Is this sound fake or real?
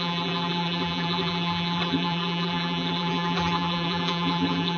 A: fake